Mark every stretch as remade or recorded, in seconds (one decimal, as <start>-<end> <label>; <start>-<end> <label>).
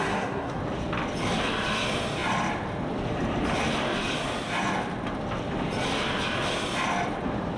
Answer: 0.0-0.6 remade; 0.6-7.6 recorded